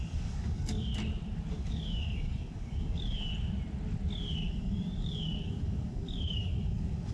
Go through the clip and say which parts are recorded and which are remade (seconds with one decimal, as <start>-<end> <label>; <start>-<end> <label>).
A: 0.0-0.9 remade; 0.9-1.5 recorded; 1.5-3.3 remade; 3.3-4.5 recorded; 4.5-7.1 remade